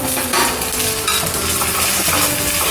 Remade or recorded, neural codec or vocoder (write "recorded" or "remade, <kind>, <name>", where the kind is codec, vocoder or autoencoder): recorded